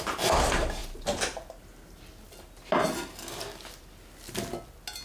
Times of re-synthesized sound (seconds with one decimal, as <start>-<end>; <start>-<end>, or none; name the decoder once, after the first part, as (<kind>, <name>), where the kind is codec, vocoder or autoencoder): none